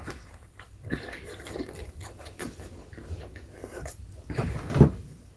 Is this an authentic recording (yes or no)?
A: no